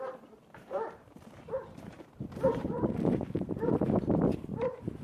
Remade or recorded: remade